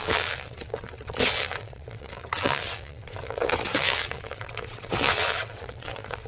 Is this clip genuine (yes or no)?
no